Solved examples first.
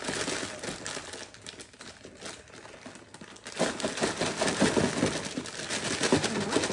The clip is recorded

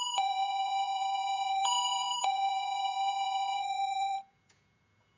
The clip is remade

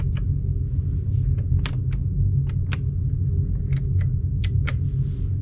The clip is recorded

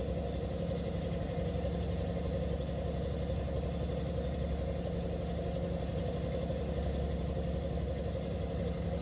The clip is recorded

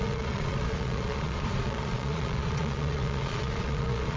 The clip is remade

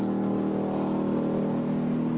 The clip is recorded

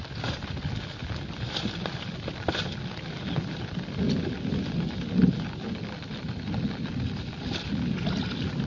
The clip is recorded